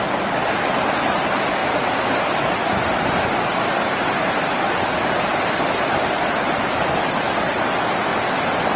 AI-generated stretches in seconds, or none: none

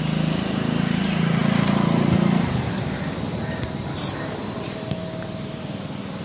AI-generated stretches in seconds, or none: none

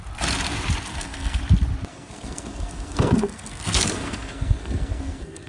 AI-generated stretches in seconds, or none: 0.9-1.4; 1.9-5.5